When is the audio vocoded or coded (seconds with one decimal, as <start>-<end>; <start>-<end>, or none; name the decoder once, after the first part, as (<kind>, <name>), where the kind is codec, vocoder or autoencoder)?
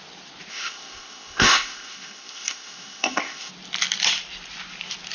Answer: 0.5-3.5 (codec, ZipCodec)